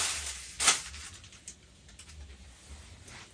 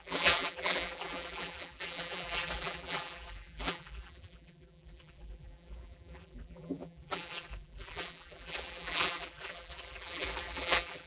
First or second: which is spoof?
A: second